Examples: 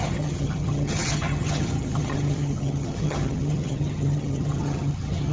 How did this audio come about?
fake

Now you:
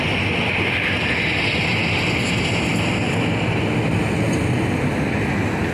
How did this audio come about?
real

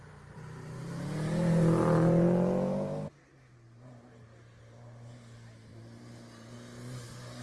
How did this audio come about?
real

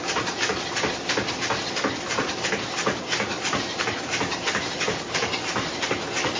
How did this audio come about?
real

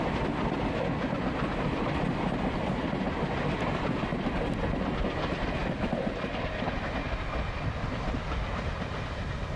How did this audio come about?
real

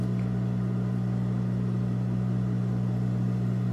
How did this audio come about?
real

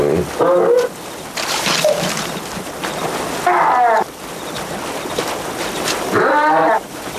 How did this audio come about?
real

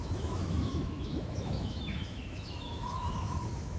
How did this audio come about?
fake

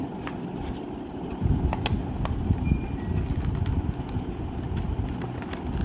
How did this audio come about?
real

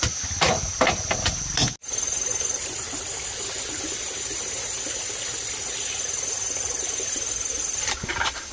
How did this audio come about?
real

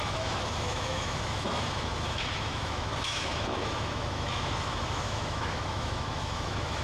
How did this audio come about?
fake